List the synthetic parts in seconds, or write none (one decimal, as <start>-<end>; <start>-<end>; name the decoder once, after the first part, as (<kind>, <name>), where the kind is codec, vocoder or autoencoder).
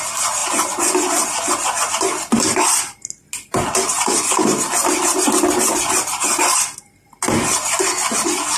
none